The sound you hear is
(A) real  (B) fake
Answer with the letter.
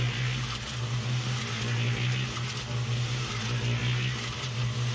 A